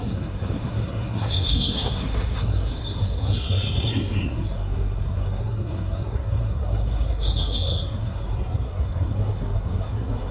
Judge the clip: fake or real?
fake